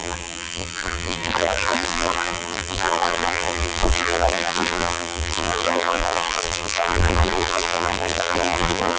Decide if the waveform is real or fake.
fake